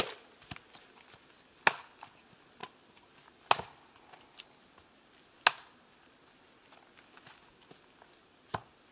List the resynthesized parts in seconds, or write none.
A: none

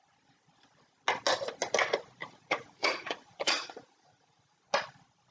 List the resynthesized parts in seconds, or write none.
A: 2.2-4.6 (vocoder, Vocos)

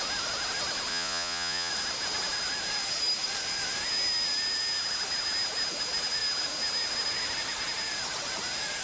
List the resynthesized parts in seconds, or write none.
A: 0.9-1.7 (vocoder, Vocos)